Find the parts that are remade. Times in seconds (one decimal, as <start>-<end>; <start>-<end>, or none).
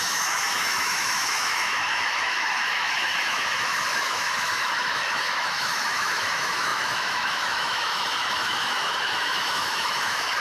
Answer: 0.0-10.4